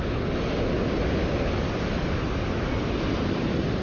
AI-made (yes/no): no